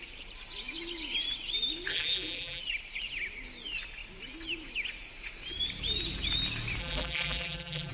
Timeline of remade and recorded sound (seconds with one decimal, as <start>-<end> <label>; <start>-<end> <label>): 0.0-1.9 recorded; 1.9-2.6 remade; 2.6-6.8 recorded; 6.8-7.9 remade